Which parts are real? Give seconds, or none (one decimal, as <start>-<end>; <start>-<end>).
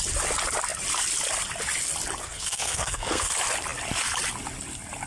0.0-2.2; 3.3-5.1